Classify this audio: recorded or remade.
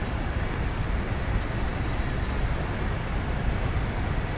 recorded